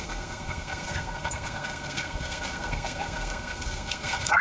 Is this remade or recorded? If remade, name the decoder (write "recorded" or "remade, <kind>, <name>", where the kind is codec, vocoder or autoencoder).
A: remade, codec, SNAC